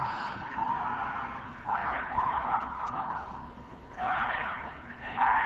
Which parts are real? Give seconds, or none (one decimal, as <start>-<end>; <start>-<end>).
0.7-1.4